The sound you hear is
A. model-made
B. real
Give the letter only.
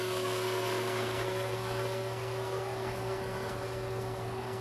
A